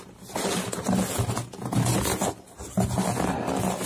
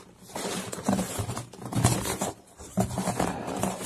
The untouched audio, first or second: first